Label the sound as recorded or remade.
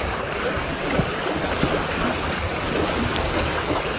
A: remade